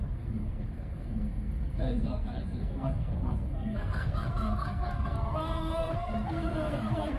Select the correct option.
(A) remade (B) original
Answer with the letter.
A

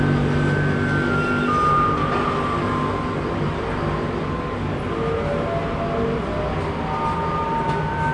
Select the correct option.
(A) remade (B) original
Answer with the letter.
B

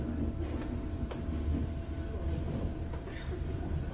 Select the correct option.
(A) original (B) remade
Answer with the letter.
A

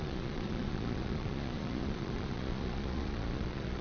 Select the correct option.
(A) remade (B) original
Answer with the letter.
A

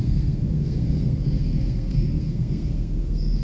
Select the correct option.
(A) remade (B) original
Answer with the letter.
A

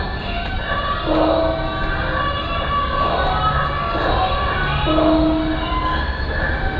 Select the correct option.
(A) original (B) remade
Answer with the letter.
A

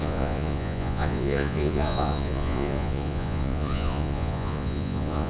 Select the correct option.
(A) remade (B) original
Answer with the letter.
A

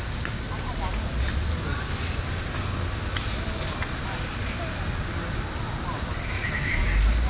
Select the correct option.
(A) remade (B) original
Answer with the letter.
B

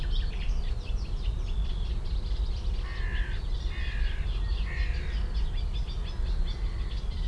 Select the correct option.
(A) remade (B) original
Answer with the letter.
B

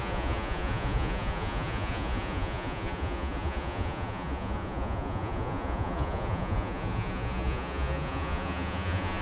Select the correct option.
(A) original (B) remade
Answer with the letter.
B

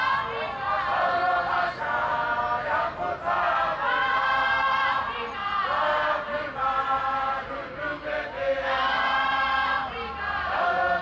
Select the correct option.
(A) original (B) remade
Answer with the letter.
A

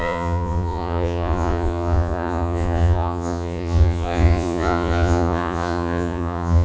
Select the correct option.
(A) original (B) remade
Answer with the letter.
B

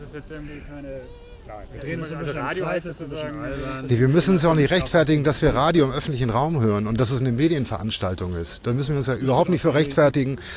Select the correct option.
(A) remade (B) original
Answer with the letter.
B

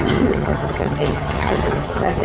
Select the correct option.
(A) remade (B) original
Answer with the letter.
A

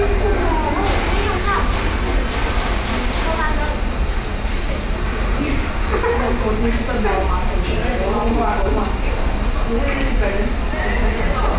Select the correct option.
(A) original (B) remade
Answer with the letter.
A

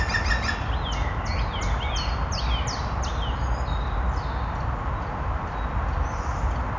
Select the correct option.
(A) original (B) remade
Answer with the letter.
A